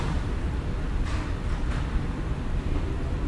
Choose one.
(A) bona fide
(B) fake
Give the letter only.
A